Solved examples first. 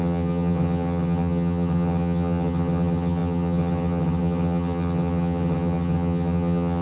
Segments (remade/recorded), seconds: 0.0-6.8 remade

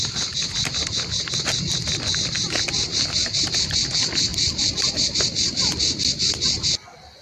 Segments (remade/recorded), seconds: 0.0-1.3 recorded; 1.3-2.4 remade; 2.4-7.2 recorded